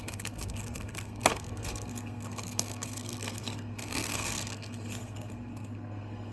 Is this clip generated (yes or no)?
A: yes